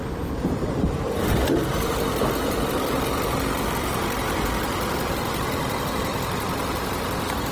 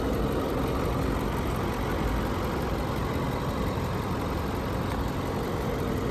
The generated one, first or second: first